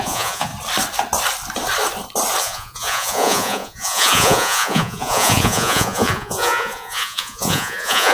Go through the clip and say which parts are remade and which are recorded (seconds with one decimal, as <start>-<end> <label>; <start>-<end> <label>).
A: 0.0-0.5 remade; 0.5-2.4 recorded; 2.4-8.1 remade